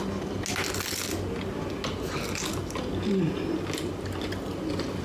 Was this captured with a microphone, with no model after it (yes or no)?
yes